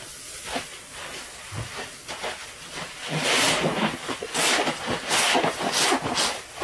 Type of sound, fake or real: real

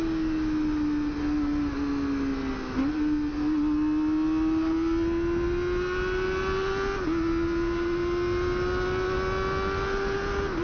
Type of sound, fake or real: real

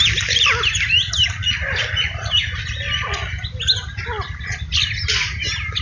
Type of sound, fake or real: real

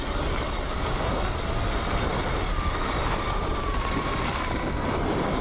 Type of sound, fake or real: real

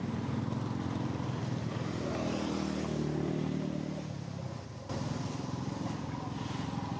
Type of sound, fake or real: real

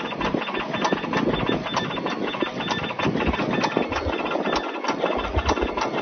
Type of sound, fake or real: real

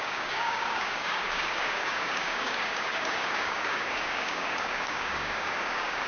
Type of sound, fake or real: fake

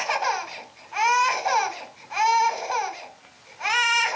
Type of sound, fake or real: real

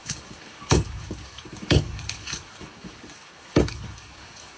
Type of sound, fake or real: fake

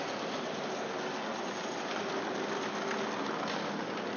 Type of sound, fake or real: real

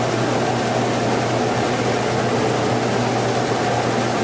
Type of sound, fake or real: real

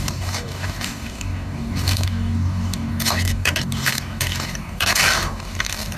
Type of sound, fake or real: fake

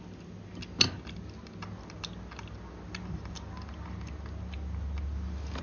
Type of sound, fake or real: real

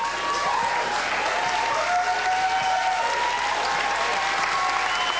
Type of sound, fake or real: real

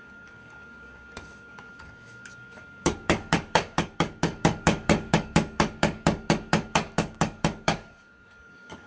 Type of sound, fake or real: fake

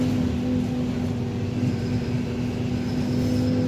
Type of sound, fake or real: real